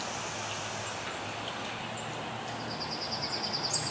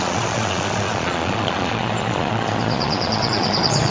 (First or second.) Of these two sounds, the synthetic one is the second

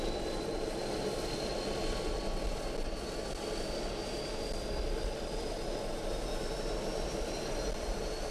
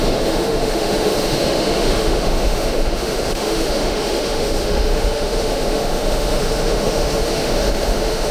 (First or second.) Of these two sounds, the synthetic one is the second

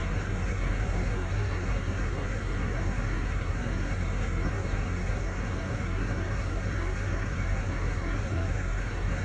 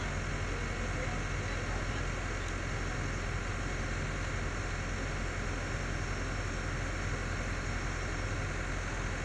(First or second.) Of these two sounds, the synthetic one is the first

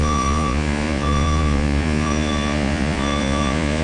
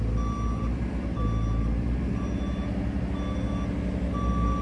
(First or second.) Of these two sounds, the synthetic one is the first